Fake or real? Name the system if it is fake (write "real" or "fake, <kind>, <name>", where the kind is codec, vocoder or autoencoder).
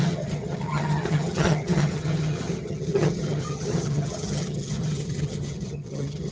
fake, vocoder, HiFi-GAN